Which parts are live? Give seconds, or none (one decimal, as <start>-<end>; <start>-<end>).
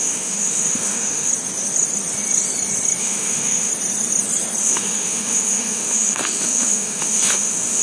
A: 1.3-3.0; 3.7-4.6